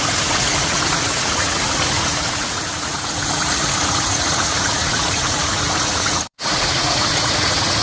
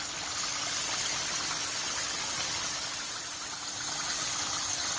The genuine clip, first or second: second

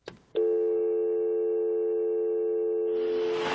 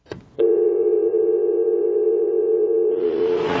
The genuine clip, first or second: first